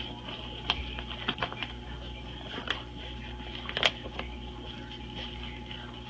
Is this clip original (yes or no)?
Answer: yes